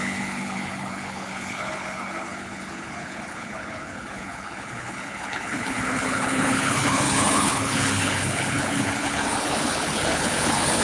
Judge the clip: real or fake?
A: fake